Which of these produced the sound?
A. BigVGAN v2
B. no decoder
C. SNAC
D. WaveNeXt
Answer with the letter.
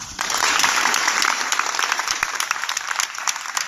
A